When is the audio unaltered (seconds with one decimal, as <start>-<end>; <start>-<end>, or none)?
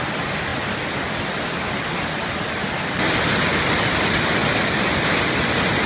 0.0-5.9